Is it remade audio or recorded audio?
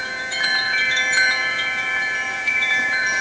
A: remade